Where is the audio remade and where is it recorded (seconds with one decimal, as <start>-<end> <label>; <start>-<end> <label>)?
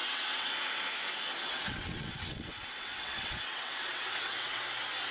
0.0-0.5 remade; 0.5-1.5 recorded; 1.5-4.6 remade; 4.6-5.1 recorded